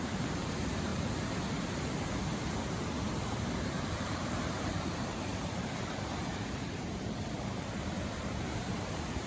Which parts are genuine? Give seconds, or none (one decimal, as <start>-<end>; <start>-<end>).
0.9-3.2